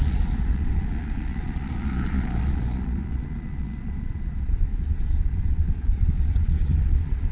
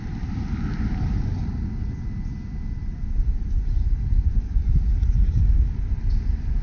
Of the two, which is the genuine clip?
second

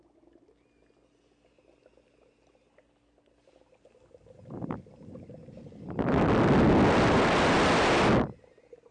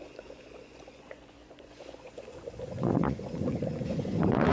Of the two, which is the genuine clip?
first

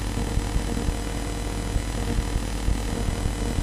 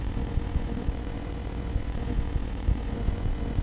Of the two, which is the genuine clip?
first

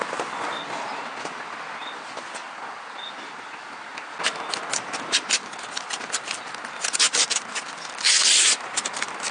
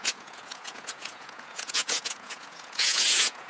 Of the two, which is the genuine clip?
first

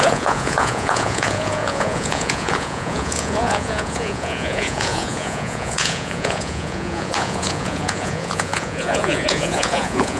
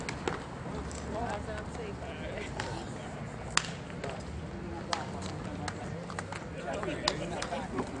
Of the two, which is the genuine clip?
second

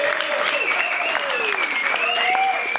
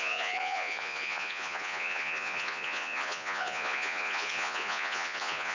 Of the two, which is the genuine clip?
first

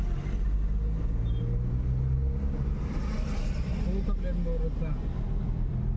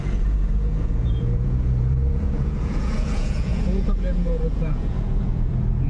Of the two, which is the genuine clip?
first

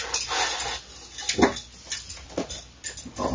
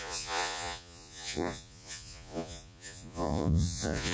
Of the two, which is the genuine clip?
first